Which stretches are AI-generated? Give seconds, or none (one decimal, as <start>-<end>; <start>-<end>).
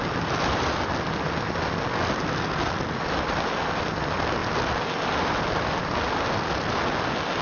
none